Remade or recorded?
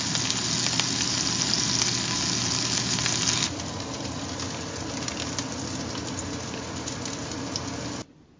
recorded